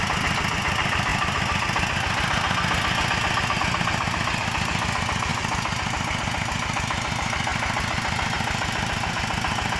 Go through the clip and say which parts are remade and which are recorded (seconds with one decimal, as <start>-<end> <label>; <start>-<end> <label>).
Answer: 0.0-9.8 recorded